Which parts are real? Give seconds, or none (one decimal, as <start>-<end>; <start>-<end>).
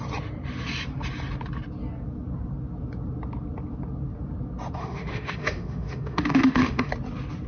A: 0.0-4.8; 6.9-7.5